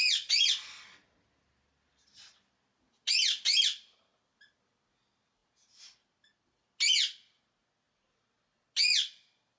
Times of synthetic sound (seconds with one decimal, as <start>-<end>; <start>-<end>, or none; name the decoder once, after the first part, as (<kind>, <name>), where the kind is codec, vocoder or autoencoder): none